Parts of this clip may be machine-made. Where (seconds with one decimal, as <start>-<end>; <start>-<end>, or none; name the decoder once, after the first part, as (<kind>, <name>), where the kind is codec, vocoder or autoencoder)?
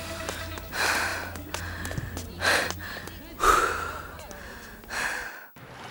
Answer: none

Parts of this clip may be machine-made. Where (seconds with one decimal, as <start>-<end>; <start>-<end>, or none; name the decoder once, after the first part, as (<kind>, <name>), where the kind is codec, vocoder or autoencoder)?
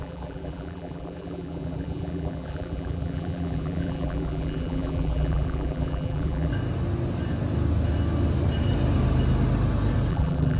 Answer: 0.0-6.5 (vocoder, BigVGAN v2); 10.1-10.6